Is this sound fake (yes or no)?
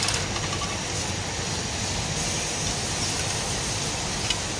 no